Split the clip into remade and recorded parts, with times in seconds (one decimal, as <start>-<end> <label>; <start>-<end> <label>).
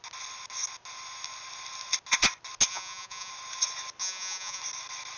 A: 0.0-2.7 recorded; 2.7-3.3 remade; 3.3-4.0 recorded; 4.0-4.6 remade; 4.6-5.2 recorded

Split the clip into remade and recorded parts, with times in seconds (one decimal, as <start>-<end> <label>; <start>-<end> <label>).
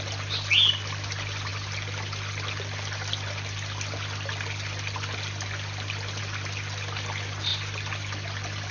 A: 0.0-8.7 recorded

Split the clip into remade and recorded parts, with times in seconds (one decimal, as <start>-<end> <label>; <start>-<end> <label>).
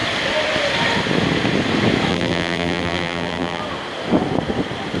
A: 0.0-2.1 recorded; 2.1-3.6 remade; 3.6-5.0 recorded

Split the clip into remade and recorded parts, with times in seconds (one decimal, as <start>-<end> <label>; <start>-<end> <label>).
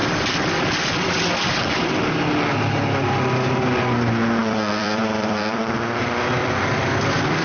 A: 0.0-1.1 remade; 1.1-4.4 recorded; 4.4-5.6 remade; 5.6-6.4 recorded; 6.4-7.4 remade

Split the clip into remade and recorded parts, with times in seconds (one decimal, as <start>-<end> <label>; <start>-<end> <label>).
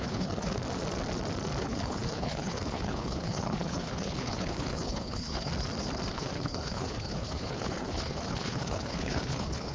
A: 0.0-0.6 remade; 0.6-1.6 recorded; 1.6-5.5 remade; 5.5-6.1 recorded; 6.1-9.7 remade